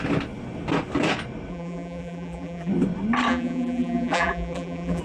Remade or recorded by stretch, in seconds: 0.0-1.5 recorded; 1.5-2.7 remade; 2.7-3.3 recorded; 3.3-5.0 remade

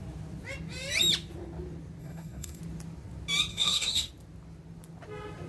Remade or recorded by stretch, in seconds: 0.0-2.0 recorded; 2.0-2.6 remade; 2.6-3.5 recorded; 3.5-4.1 remade; 4.1-5.5 recorded

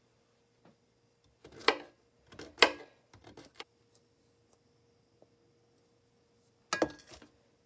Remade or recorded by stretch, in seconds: 0.0-7.7 recorded

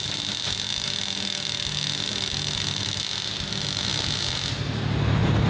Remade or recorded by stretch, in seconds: 0.0-0.7 recorded; 0.7-3.0 remade; 3.0-3.5 recorded; 3.5-4.0 remade; 4.0-5.5 recorded

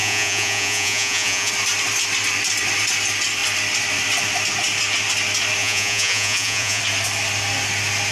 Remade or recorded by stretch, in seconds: 0.0-1.5 remade; 1.5-5.6 recorded; 5.6-6.8 remade; 6.8-8.1 recorded

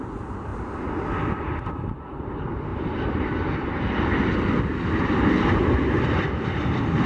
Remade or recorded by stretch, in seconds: 0.0-0.5 remade; 0.5-1.1 recorded; 1.1-7.1 remade

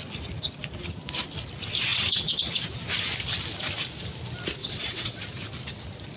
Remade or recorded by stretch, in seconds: 0.0-1.9 recorded; 1.9-2.4 remade; 2.4-4.6 recorded; 4.6-5.2 remade; 5.2-6.2 recorded